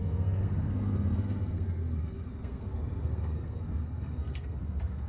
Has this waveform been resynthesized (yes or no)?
yes